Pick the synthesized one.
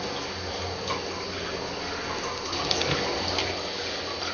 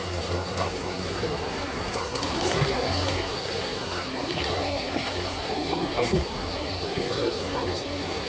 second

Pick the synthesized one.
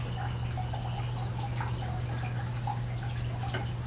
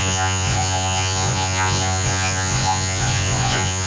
second